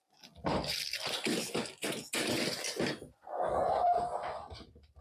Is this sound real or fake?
real